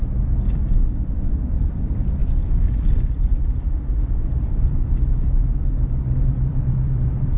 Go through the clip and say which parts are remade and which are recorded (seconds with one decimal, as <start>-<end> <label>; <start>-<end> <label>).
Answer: 0.0-0.5 recorded; 0.5-7.4 remade